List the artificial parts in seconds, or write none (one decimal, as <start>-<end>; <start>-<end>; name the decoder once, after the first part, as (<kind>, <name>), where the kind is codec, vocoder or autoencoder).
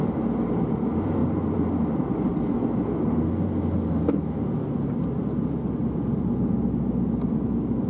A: 1.2-2.3 (vocoder, BigVGAN v2)